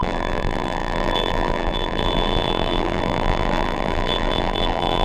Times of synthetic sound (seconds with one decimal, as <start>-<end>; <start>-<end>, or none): 0.0-5.0